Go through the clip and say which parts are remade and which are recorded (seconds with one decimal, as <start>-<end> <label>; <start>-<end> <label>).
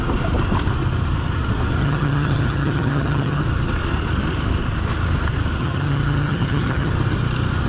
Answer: 0.0-1.8 recorded; 1.8-3.4 remade; 3.4-5.6 recorded; 5.6-6.9 remade; 6.9-7.7 recorded